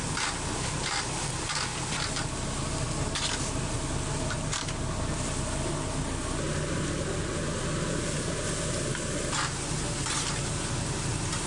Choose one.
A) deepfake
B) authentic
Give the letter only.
B